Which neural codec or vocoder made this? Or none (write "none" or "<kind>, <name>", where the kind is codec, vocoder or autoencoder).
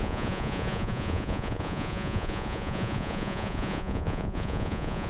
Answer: vocoder, Vocos